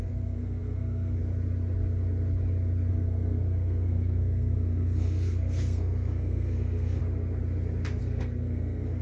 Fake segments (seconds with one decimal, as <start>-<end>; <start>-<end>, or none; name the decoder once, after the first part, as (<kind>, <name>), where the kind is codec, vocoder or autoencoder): 0.0-1.2 (codec, SNAC); 2.9-7.0; 8.0-9.0